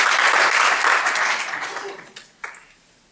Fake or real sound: real